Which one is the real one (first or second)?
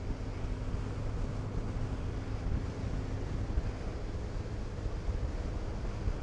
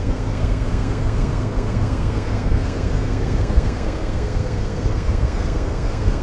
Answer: first